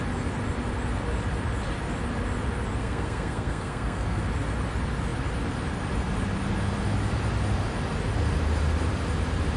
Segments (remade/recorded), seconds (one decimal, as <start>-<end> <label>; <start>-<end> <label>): 0.0-2.8 recorded; 2.8-4.2 remade; 4.2-9.6 recorded